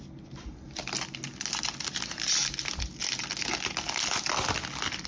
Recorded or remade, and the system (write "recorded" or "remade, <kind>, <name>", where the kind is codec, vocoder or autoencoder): recorded